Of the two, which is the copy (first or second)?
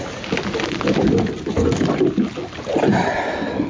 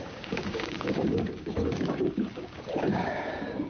second